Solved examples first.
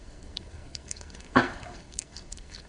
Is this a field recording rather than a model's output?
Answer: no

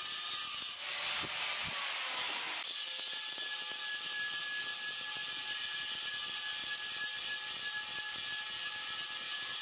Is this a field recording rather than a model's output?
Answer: yes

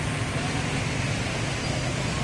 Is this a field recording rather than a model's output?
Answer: yes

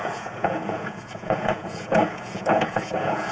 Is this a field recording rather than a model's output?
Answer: no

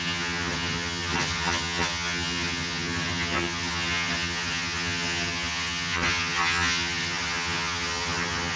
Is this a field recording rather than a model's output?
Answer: no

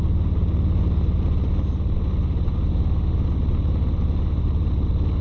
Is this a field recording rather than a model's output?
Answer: yes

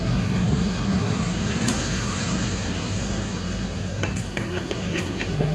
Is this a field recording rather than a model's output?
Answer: no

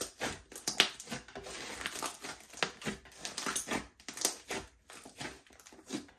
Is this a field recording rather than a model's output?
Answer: yes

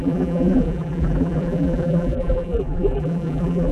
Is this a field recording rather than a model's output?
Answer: no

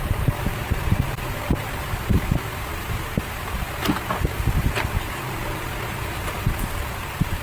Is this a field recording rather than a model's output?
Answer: no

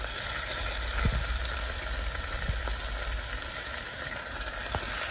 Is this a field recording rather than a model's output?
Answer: yes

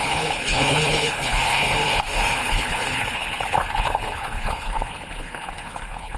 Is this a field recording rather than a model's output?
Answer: no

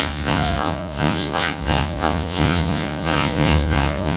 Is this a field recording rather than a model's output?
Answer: no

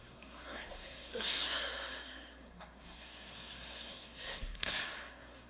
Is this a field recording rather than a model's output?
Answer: no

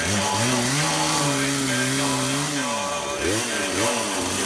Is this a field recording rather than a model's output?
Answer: yes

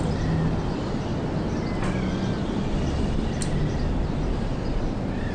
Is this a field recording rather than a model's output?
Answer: yes